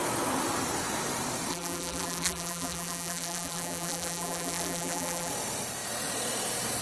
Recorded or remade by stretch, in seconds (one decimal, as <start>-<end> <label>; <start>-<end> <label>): 0.0-1.5 recorded; 1.5-5.3 remade; 5.3-6.8 recorded